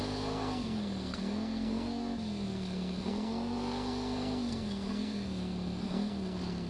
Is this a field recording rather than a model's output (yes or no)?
no